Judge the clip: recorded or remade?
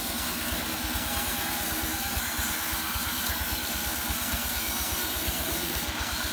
remade